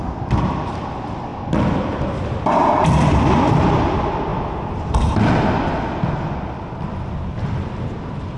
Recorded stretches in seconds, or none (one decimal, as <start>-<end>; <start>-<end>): 0.0-8.4